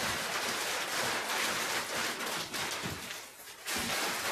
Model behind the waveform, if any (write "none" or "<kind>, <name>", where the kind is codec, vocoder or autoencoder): none